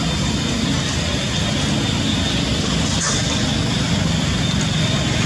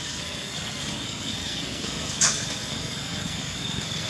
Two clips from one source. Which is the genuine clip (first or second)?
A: first